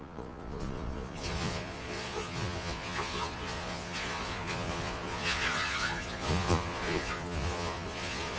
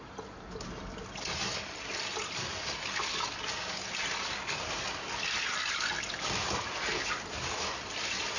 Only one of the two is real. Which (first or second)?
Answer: second